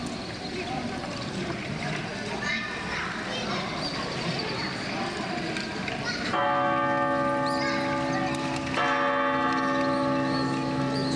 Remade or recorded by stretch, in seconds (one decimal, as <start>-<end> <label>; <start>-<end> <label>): 0.0-11.2 recorded